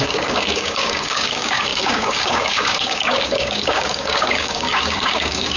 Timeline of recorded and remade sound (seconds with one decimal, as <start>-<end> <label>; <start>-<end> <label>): 0.0-5.6 remade